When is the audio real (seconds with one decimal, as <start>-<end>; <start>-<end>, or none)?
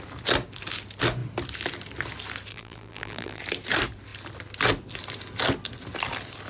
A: 0.0-2.5; 3.4-6.5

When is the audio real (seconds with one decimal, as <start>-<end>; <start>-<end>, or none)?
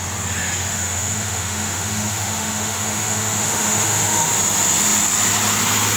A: 0.0-0.7; 4.3-6.0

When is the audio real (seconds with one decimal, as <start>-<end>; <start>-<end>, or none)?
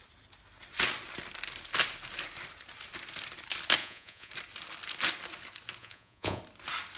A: 0.0-3.8; 4.3-5.8; 6.4-7.0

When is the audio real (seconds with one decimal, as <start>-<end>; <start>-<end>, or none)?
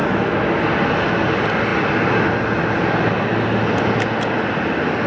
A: 0.6-5.1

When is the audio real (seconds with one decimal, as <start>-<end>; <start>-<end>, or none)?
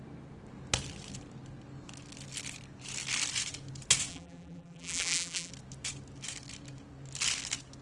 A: 0.0-4.1; 5.5-7.8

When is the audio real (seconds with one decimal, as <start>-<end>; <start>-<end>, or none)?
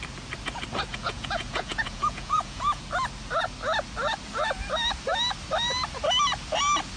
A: 0.0-0.9; 2.8-7.0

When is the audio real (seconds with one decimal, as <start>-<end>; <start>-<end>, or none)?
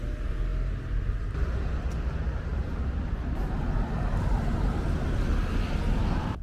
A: 0.0-6.4